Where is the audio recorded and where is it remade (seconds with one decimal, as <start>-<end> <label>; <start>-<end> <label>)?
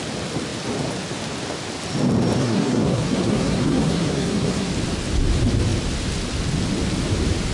0.0-2.4 recorded; 2.4-4.7 remade; 4.7-7.5 recorded